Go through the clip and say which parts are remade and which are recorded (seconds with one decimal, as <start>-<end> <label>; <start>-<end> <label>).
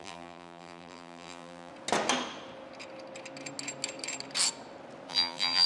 0.0-1.7 remade; 1.7-5.1 recorded; 5.1-5.7 remade